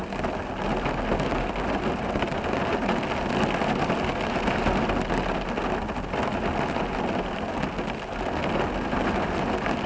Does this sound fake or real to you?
real